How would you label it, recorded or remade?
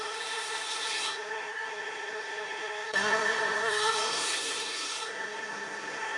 remade